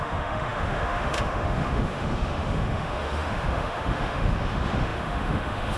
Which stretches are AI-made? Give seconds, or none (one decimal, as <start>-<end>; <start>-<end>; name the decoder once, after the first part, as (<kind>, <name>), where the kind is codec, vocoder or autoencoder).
0.0-5.8 (autoencoder, DAC-VAE)